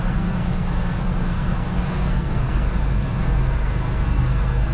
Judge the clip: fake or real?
fake